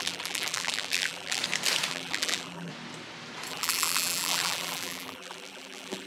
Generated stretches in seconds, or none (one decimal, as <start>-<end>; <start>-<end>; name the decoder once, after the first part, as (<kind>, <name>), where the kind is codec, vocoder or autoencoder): 0.0-1.4 (vocoder, BigVGAN v2); 1.9-2.7; 3.5-6.1